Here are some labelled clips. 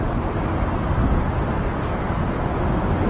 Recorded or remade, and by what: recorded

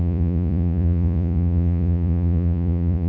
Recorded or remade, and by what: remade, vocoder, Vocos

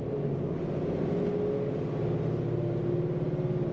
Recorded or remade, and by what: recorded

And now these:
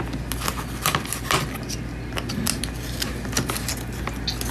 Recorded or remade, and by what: recorded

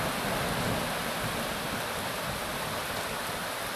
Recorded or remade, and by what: recorded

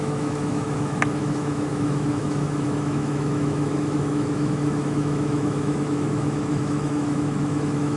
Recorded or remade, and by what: remade, autoencoder, DAC-VAE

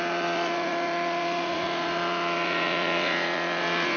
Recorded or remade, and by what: remade, vocoder, Vocos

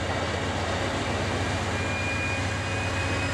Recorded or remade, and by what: recorded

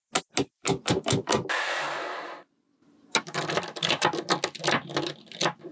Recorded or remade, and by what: recorded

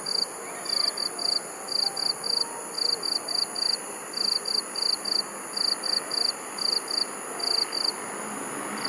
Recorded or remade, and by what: recorded